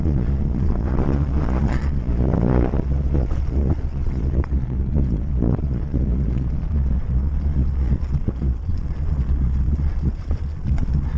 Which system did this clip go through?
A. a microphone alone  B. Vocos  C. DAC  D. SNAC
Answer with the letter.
B